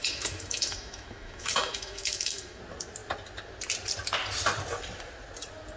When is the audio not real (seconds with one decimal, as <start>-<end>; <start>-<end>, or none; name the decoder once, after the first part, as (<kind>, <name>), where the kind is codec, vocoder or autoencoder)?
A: 0.0-2.6 (autoencoder, DAC-VAE)